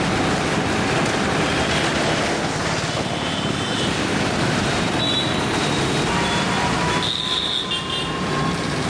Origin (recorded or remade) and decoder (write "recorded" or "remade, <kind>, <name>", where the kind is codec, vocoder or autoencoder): recorded